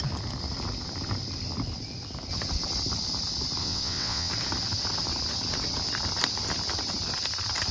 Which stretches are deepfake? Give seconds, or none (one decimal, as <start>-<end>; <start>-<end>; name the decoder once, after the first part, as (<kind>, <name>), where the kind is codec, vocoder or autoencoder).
3.6-4.3 (vocoder, WaveNeXt)